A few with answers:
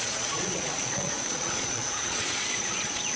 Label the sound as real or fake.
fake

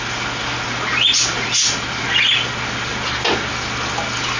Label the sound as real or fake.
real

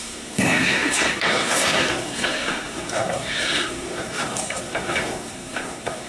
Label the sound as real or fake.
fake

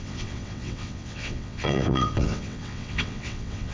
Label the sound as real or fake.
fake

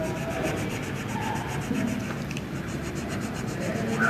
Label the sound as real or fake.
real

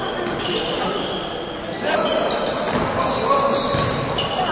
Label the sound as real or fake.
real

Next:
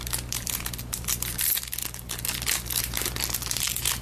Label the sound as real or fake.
real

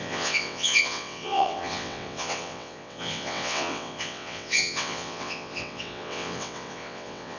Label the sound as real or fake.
fake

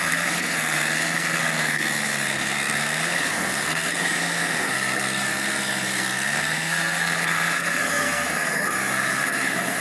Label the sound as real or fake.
fake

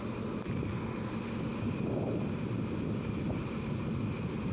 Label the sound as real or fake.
real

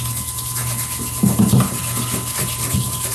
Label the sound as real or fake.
real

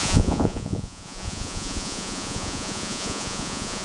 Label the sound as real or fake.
fake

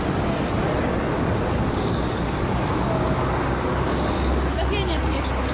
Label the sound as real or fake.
real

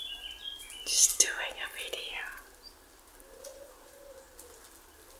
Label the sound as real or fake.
real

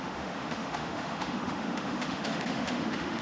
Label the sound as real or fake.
fake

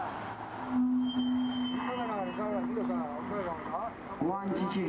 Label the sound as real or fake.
real